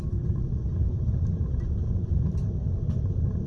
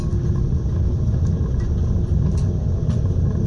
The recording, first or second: second